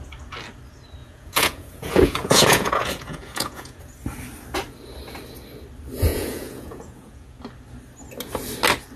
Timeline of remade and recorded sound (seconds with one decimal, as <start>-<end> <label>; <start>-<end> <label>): 0.0-1.0 recorded; 1.0-3.8 remade; 3.8-6.1 recorded; 6.1-7.4 remade; 7.4-9.0 recorded